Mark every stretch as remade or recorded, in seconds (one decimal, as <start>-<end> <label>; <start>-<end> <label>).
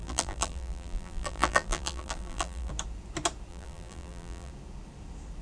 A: 0.0-2.7 remade; 2.7-3.5 recorded; 3.5-4.5 remade; 4.5-5.4 recorded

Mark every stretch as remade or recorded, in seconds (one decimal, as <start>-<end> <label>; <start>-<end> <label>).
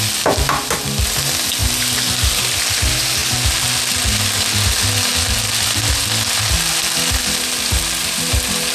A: 0.0-1.6 recorded; 1.6-2.4 remade; 2.4-8.7 recorded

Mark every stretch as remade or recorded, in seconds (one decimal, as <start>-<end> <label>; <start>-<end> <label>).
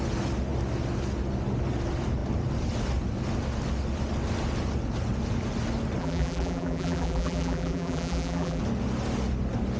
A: 0.0-6.0 recorded; 6.0-8.6 remade; 8.6-9.8 recorded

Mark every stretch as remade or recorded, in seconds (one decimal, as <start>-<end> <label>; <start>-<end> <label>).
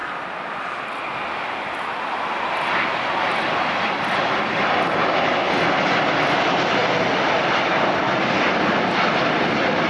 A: 0.0-0.8 remade; 0.8-6.8 recorded; 6.8-9.2 remade; 9.2-9.9 recorded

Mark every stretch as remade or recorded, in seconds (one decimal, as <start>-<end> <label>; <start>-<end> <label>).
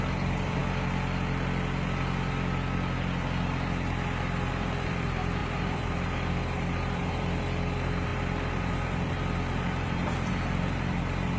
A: 0.0-0.6 remade; 0.6-4.5 recorded; 4.5-11.4 remade